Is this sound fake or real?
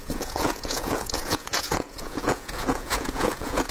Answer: fake